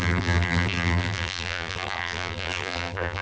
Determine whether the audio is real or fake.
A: fake